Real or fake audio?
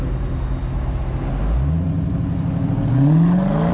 real